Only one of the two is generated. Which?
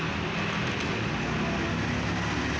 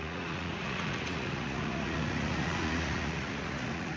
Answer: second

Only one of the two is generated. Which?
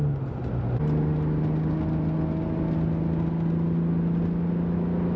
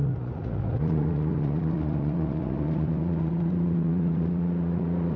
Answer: second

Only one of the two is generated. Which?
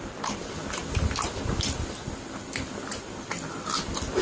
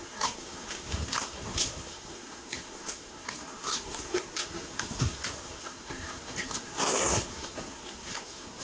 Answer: second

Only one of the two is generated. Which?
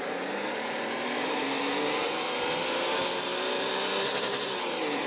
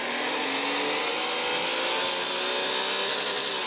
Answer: first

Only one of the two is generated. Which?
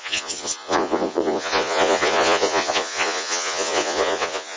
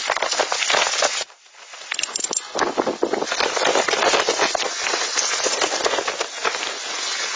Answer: first